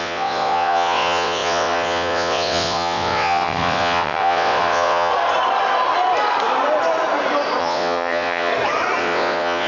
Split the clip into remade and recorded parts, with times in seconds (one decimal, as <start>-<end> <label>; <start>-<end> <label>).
0.0-5.1 remade; 5.1-7.6 recorded; 7.6-8.5 remade; 8.5-9.0 recorded; 9.0-9.7 remade